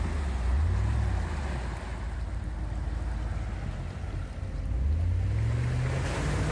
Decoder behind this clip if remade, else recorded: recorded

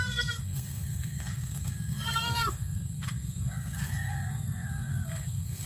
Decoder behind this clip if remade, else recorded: remade, codec, SNAC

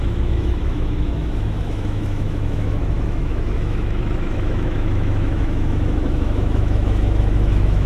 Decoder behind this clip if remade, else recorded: remade, autoencoder, DAC-VAE